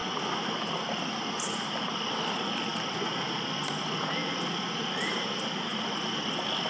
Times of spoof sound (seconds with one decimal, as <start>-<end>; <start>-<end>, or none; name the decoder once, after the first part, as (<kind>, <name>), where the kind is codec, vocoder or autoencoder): none